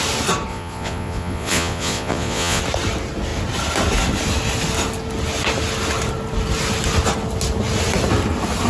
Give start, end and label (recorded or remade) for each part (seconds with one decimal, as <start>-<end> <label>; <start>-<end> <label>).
0.0-0.5 recorded; 0.5-2.6 remade; 2.6-8.7 recorded